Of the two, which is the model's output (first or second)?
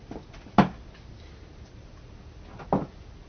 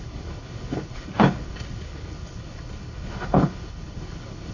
second